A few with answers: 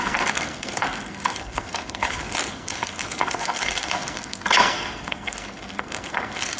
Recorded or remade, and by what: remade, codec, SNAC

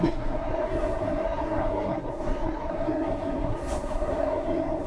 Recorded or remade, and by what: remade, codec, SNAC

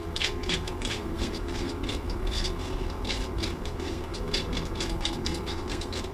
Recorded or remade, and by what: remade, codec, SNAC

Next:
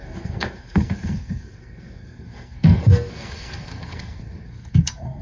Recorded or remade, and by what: remade, codec, SNAC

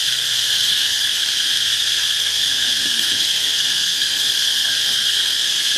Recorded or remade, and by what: remade, codec, SNAC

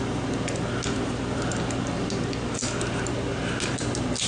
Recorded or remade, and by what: recorded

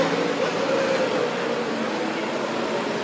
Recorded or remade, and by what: recorded